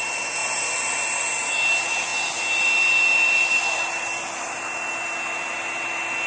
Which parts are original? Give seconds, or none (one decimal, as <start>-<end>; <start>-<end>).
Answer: 0.0-6.3